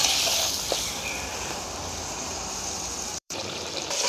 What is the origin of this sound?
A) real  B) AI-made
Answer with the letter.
B